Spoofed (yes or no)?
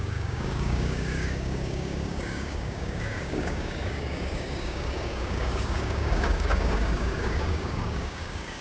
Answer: yes